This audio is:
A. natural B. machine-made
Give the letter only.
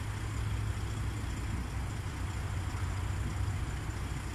A